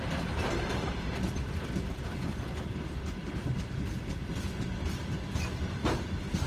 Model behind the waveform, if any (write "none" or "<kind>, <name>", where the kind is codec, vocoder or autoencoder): none